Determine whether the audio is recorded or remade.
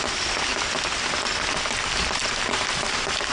recorded